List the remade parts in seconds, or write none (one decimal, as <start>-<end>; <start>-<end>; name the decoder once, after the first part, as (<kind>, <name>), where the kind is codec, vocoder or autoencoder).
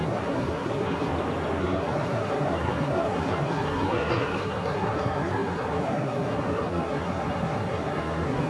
0.0-1.1 (codec, SNAC); 1.6-8.5